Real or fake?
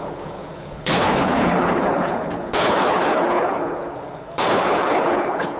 fake